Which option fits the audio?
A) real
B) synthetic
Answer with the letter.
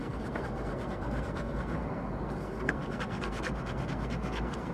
B